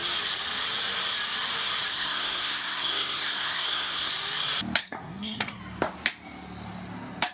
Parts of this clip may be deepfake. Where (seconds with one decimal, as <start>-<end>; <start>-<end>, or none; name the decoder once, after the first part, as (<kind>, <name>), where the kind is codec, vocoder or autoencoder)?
1.9-4.1 (codec, SNAC); 4.8-5.6